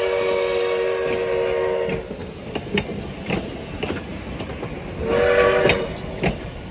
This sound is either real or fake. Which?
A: real